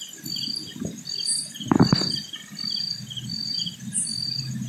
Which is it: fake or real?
real